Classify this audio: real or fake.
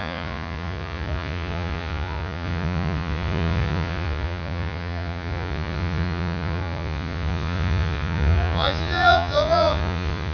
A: fake